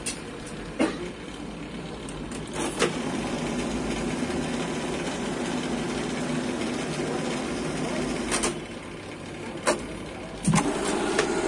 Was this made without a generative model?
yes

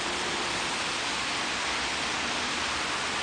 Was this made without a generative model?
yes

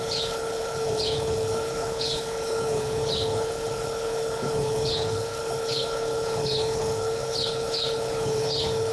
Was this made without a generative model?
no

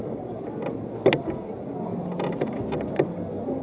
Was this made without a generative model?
yes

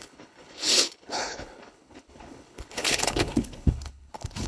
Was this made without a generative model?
no